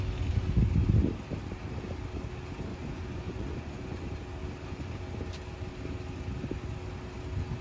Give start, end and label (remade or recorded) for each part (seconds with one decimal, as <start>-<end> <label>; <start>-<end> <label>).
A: 0.0-2.7 recorded; 2.7-4.0 remade; 4.0-7.6 recorded